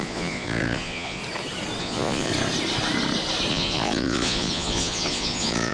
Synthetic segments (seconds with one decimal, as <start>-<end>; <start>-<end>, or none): 0.0-1.2; 1.8-2.3; 3.5-5.7